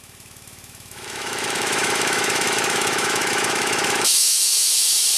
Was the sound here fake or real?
fake